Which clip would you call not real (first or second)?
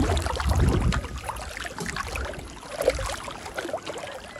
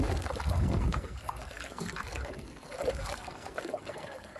second